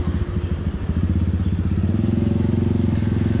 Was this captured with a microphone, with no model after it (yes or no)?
yes